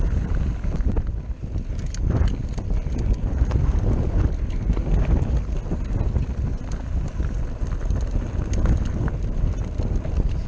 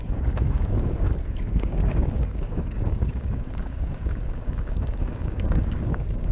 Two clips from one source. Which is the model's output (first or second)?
second